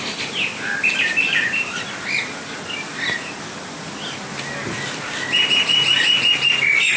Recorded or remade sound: recorded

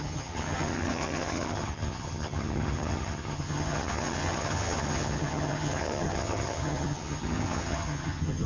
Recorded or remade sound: remade